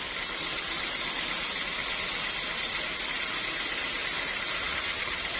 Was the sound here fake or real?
real